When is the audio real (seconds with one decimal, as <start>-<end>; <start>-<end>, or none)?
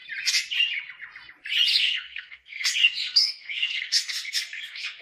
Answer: 0.0-1.7